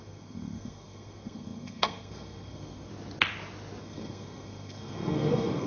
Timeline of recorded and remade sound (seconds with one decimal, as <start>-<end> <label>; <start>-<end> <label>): 0.0-2.9 remade; 2.9-3.8 recorded; 3.8-5.7 remade